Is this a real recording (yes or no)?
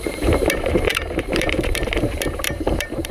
no